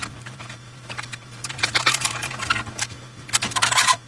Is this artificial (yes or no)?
yes